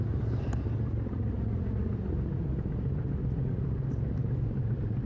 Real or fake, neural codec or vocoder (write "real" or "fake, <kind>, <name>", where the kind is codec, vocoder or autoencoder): real